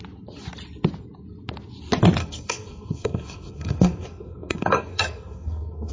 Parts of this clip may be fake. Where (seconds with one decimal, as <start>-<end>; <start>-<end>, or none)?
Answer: 2.2-5.9